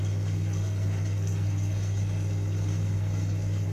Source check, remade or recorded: remade